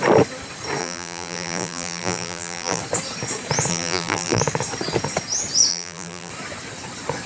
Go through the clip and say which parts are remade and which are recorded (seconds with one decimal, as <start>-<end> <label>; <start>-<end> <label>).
0.0-0.8 recorded; 0.8-2.8 remade; 2.8-3.7 recorded; 3.7-4.4 remade; 4.4-5.7 recorded; 5.7-6.3 remade; 6.3-7.3 recorded